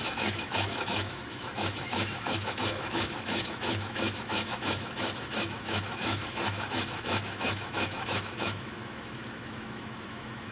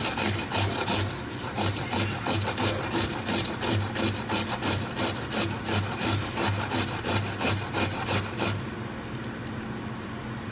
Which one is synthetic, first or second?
first